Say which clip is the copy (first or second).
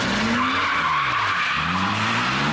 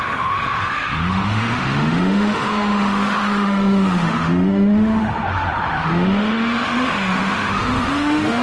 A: second